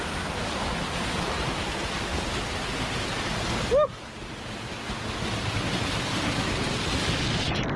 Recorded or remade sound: recorded